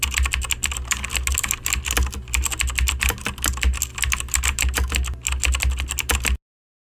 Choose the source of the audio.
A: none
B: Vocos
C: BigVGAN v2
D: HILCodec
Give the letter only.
A